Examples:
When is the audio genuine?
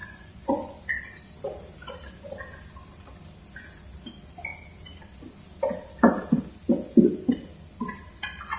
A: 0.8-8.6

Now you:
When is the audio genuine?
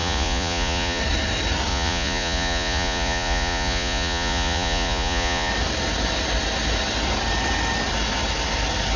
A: 1.0-1.7; 5.5-9.0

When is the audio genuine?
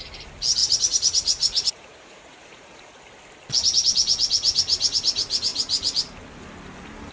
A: 0.0-0.6; 3.0-7.1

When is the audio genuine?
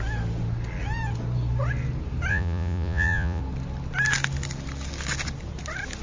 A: 0.0-2.3; 3.4-6.0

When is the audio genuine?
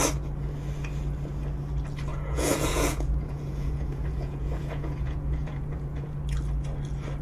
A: 0.0-2.1; 6.2-7.2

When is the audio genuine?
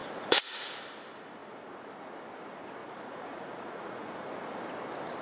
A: 0.7-2.8; 4.1-5.2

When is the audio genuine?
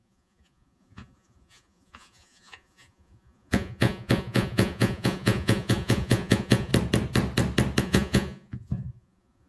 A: 6.7-7.8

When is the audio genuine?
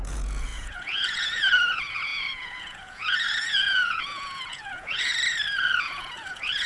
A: 5.1-5.8